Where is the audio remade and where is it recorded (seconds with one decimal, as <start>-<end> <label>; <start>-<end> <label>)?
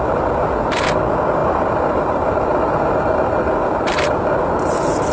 0.0-1.4 recorded; 1.4-4.3 remade; 4.3-5.1 recorded